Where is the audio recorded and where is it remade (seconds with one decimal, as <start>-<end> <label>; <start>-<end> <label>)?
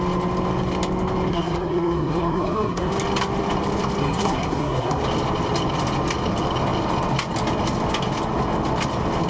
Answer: 0.0-1.3 recorded; 1.3-2.9 remade; 2.9-4.0 recorded; 4.0-5.0 remade; 5.0-9.3 recorded